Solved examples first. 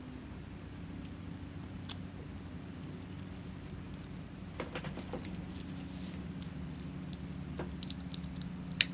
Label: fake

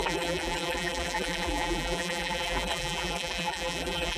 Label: fake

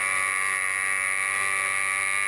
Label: real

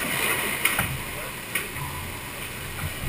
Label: real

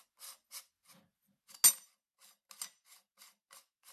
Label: real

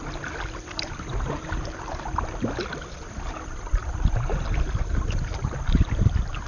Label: real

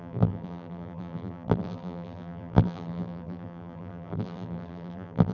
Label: fake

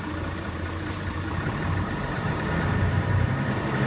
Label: fake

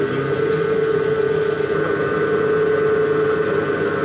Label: real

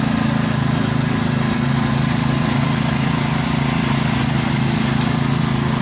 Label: real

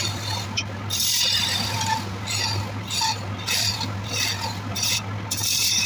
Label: real